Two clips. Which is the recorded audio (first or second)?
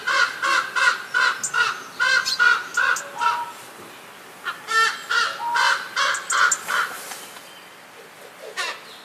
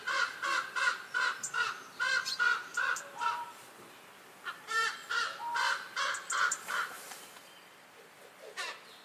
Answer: first